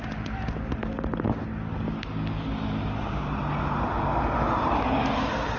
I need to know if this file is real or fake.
real